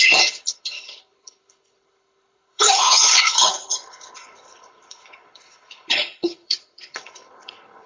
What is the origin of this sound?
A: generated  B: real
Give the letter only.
A